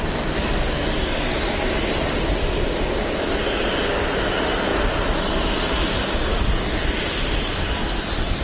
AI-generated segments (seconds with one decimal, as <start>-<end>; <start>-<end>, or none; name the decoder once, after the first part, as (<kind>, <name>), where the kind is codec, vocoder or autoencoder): none